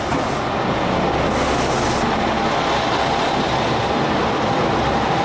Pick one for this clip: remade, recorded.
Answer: recorded